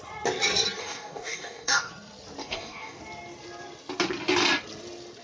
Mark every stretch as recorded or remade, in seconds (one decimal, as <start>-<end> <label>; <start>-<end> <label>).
0.0-0.8 recorded; 0.8-1.9 remade; 1.9-2.4 recorded; 2.4-3.0 remade; 3.0-5.2 recorded